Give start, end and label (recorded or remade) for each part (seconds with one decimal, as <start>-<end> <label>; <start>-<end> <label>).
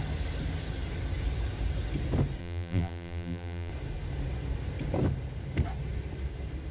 0.0-2.4 recorded; 2.4-3.7 remade; 3.7-6.7 recorded